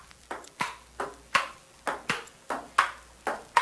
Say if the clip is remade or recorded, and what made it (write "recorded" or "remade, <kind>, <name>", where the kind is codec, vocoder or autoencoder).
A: recorded